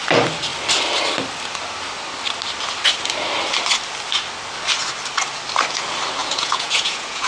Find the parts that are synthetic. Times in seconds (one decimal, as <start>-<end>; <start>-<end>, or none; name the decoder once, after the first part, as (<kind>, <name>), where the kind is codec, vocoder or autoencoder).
6.2-7.3 (vocoder, Vocos)